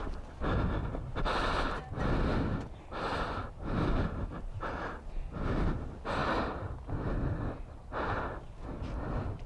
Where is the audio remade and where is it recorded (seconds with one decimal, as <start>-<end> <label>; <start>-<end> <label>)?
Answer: 0.0-9.5 recorded